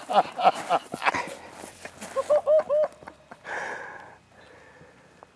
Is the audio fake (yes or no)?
no